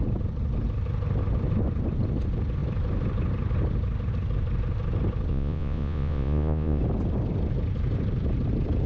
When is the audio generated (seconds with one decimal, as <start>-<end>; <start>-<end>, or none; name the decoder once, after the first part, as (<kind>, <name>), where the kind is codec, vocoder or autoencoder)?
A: 5.3-6.8 (vocoder, Vocos)